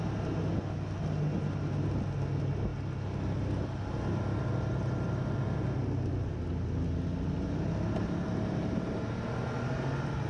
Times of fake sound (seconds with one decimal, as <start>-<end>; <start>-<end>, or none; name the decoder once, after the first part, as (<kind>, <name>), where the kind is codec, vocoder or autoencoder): none